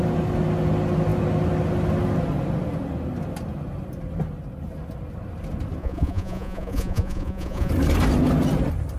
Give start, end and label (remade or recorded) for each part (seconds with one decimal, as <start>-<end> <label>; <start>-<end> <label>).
0.0-5.8 recorded; 5.8-7.7 remade; 7.7-9.0 recorded